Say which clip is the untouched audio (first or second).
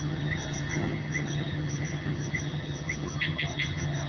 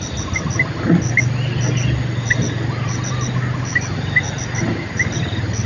second